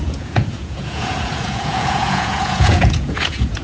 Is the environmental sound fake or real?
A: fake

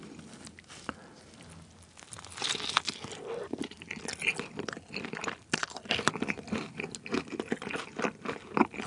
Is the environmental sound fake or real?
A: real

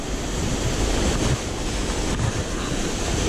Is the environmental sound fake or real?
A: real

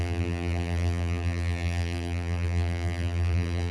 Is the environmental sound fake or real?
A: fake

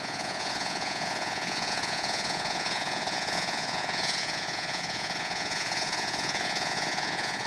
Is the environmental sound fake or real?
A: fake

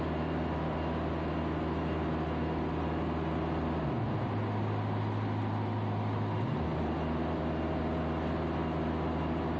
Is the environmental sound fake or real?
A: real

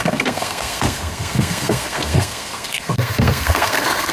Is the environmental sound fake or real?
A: fake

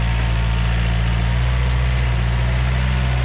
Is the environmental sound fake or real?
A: real